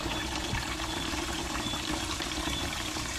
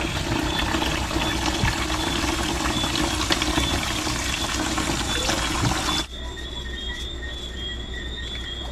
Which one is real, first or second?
second